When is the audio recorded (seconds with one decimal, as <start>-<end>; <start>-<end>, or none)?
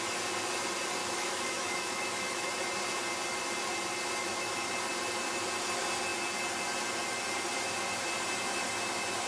0.0-1.0; 2.5-4.2; 4.7-9.3